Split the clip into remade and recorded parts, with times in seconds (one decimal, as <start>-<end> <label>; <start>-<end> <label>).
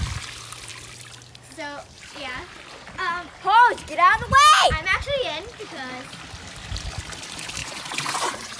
0.0-7.6 recorded; 7.6-8.6 remade